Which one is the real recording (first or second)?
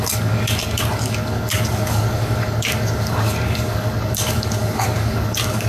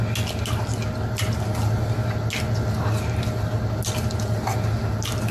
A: second